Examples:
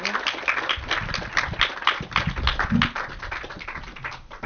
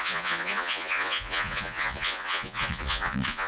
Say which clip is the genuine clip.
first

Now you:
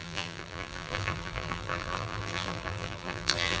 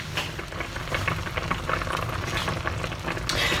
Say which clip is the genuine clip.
second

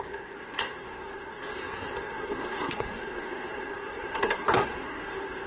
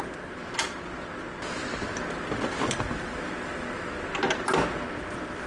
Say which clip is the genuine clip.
second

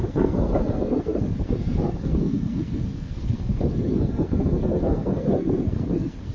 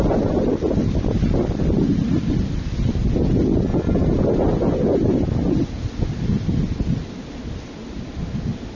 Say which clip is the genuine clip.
second